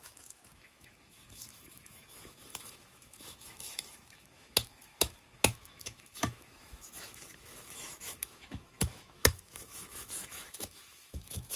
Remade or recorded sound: remade